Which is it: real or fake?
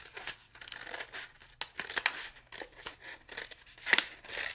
real